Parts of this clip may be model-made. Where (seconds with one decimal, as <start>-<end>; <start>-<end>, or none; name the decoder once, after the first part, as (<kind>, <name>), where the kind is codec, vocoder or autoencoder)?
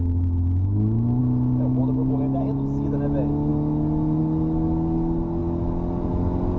none